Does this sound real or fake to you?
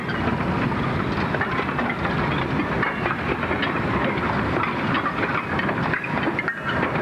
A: real